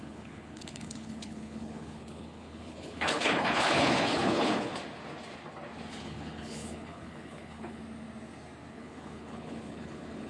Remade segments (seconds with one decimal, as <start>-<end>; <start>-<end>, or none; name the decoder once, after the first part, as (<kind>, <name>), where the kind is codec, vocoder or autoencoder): 0.0-4.8 (codec, HILCodec); 5.9-7.8; 8.7-10.3